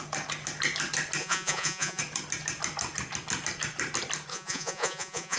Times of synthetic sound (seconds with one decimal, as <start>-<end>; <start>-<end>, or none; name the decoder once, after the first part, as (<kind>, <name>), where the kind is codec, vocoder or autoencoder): 1.2-2.0 (vocoder, Vocos); 4.3-5.4